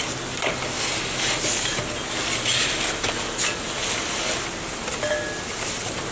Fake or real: real